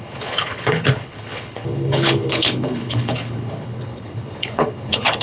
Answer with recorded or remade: remade